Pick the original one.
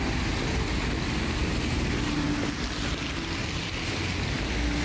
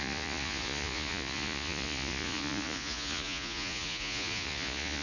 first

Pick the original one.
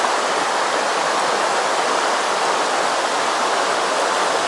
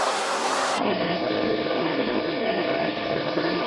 first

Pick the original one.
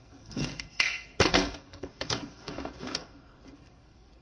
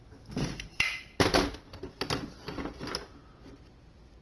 second